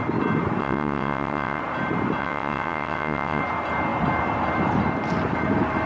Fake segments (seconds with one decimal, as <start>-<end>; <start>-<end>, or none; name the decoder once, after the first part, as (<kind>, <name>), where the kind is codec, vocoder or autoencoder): 0.6-1.6 (vocoder, WaveNeXt); 2.2-3.4